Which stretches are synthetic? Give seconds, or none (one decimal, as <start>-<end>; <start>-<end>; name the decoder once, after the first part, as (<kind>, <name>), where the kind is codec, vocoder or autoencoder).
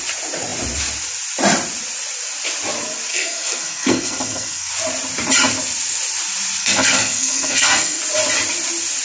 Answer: 3.1-4.7 (codec, SNAC); 6.6-8.0